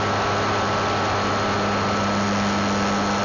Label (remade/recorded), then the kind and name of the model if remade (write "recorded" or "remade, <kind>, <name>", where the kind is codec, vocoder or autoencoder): recorded